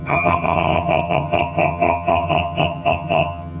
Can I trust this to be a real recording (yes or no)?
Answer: no